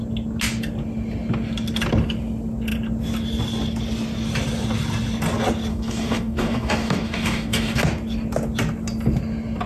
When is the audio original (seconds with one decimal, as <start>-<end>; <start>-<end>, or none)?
0.0-5.7; 7.8-9.7